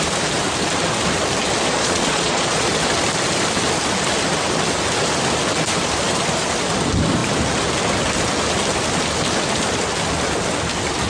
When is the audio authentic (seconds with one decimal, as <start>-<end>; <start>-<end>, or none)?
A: 0.0-1.7; 2.7-11.1